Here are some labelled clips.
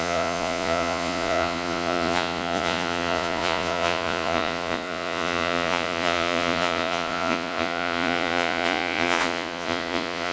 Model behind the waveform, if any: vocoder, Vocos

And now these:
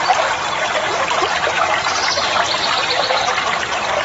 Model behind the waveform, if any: none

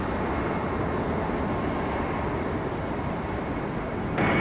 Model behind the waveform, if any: none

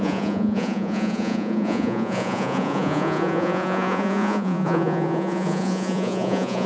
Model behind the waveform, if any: vocoder, Vocos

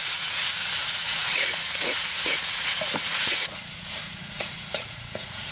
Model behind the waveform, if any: vocoder, Vocos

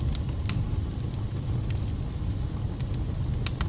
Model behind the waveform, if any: none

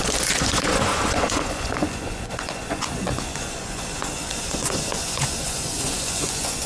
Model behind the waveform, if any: vocoder, Vocos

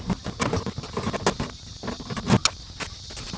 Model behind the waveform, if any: none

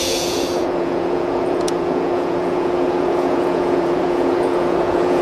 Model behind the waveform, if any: vocoder, Vocos